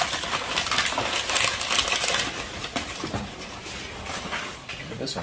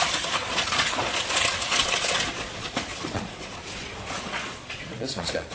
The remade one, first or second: second